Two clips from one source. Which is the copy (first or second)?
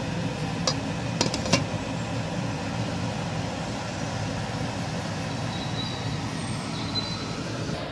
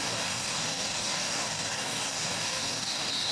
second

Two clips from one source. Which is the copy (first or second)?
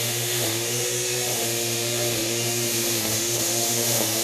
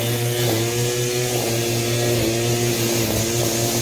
first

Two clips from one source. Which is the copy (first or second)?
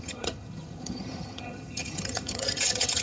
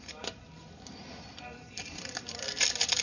first